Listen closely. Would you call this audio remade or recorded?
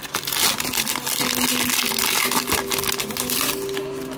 recorded